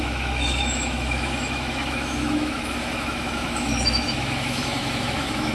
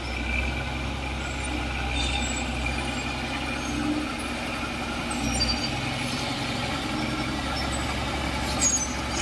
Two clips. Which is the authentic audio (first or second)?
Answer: second